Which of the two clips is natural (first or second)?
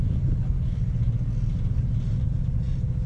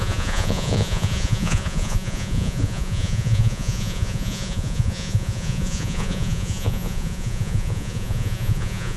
first